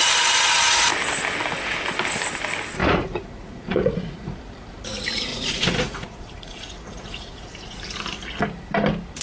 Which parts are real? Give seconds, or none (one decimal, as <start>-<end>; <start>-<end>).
0.0-2.8; 4.4-5.3; 7.5-9.2